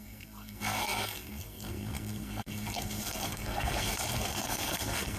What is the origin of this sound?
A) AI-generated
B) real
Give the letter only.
A